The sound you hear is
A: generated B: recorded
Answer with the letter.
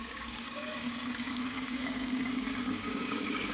A